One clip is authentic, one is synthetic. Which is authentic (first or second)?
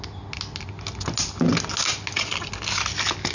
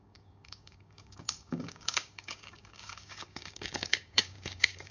first